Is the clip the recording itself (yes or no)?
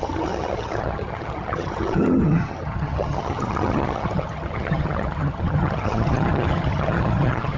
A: no